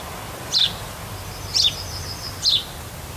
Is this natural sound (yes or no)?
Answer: yes